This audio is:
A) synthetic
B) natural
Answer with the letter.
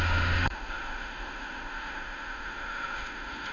A